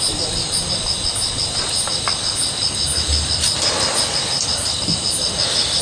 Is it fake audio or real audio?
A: real